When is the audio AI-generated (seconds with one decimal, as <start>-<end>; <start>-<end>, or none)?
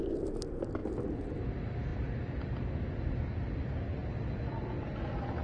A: none